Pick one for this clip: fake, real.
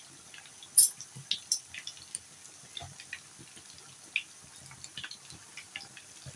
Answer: real